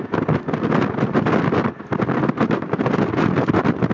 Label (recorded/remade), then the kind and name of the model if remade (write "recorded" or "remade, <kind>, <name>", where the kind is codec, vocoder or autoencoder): recorded